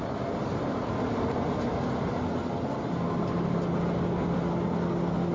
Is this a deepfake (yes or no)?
no